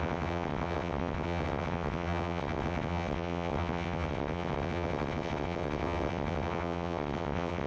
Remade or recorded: remade